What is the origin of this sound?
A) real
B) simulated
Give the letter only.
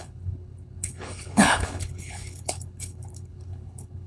B